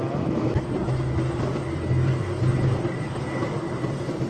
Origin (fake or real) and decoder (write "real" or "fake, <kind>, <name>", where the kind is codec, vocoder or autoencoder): real